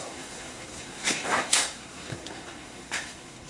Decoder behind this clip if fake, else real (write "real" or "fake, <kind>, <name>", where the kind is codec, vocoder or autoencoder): fake, codec, SNAC